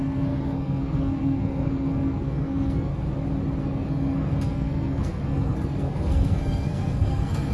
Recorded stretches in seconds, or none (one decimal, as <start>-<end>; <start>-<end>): 2.9-3.6